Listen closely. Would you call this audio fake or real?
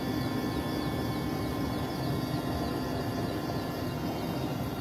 real